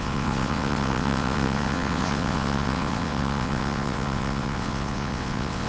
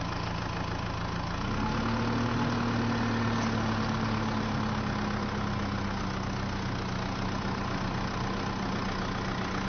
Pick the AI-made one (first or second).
first